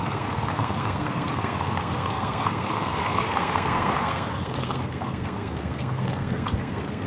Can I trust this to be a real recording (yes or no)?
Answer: no